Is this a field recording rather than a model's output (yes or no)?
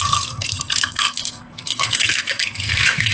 no